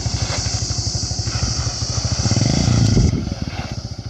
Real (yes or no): yes